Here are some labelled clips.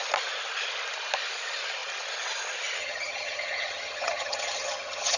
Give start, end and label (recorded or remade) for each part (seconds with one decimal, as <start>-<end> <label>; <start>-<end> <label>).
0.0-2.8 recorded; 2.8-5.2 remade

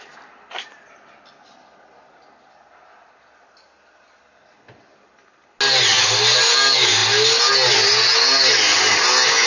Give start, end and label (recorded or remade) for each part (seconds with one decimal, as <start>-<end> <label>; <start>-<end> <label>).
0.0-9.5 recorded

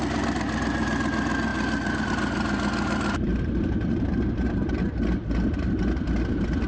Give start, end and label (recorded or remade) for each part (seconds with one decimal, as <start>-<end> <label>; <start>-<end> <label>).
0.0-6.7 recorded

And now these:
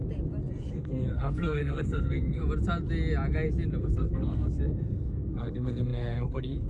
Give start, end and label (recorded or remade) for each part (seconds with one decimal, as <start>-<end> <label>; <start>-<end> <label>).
0.0-0.7 recorded; 0.7-2.4 remade; 2.4-3.8 recorded; 3.8-6.7 remade